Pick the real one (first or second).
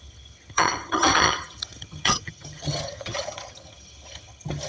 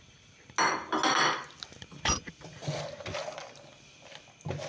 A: second